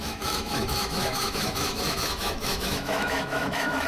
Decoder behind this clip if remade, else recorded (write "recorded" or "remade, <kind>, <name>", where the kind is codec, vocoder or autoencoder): remade, autoencoder, DAC-VAE